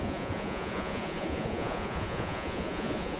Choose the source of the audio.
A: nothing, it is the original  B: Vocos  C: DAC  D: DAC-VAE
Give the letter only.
B